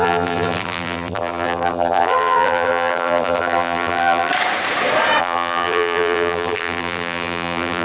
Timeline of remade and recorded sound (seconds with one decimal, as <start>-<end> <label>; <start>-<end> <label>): 0.0-4.3 remade; 4.3-5.2 recorded; 5.2-7.8 remade